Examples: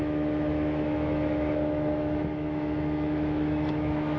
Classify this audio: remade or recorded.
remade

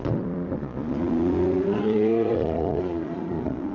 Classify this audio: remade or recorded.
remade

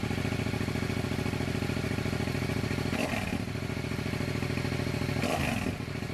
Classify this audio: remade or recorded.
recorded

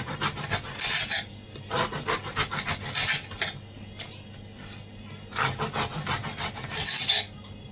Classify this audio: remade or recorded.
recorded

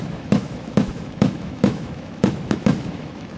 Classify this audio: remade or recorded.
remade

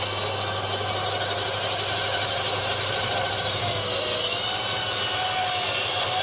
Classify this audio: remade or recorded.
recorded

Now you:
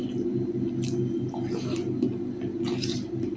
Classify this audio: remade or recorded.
recorded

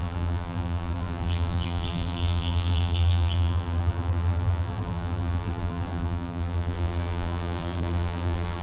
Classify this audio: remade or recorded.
remade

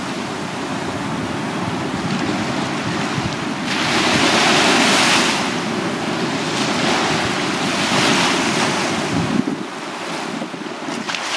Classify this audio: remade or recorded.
recorded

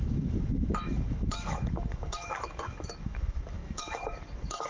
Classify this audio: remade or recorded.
remade